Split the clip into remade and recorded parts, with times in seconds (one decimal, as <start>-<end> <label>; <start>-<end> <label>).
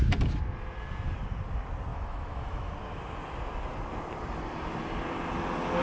0.0-1.9 recorded; 1.9-2.7 remade; 2.7-5.8 recorded